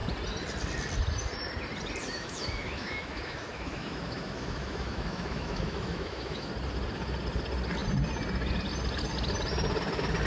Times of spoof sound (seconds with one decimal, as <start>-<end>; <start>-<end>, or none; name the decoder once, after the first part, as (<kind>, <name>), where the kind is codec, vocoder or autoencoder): 2.0-6.5 (autoencoder, DAC-VAE)